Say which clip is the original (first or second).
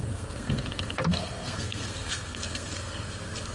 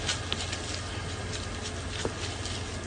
second